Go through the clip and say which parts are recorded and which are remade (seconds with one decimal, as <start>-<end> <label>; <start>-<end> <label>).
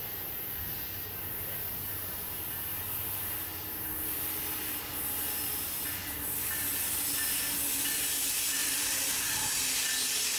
0.0-10.4 recorded